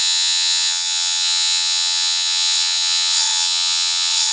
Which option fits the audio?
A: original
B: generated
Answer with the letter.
B